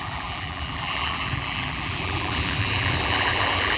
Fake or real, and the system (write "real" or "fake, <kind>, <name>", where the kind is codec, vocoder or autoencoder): fake, vocoder, BigVGAN v2